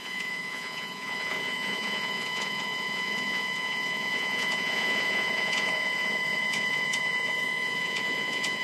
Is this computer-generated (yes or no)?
yes